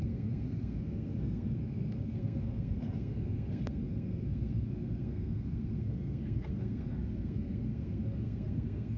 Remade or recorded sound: remade